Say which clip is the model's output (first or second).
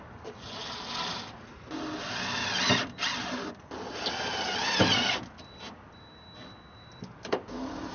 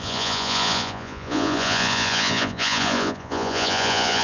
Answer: second